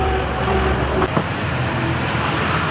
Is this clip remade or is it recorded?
recorded